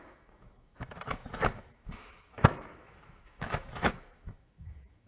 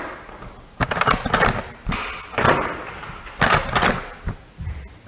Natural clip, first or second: second